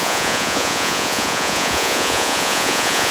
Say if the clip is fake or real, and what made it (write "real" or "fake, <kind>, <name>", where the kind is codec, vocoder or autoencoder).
fake, vocoder, Vocos